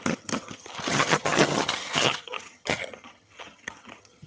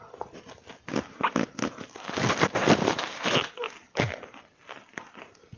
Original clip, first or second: second